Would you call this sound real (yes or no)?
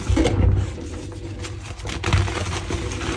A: yes